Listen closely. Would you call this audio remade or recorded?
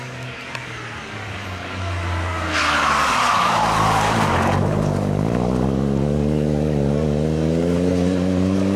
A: remade